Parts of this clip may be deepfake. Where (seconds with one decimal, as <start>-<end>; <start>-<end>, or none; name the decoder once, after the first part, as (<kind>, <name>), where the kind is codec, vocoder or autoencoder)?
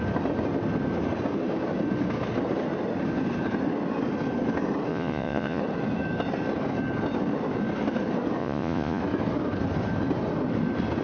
4.9-5.6 (vocoder, Vocos); 8.4-9.0